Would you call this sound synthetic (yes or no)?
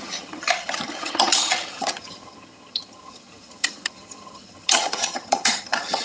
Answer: yes